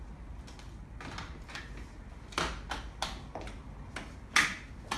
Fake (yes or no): no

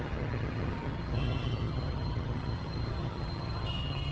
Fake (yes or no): yes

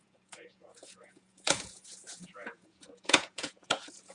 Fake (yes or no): yes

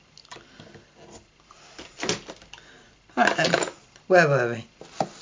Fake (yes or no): no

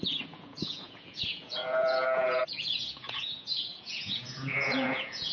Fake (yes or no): yes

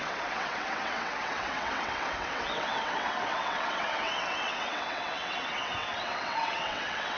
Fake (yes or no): yes